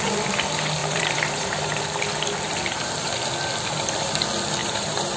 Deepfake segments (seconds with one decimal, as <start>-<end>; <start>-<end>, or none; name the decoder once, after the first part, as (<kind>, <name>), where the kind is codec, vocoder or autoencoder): 0.8-1.8 (vocoder, BigVGAN v2); 4.6-5.2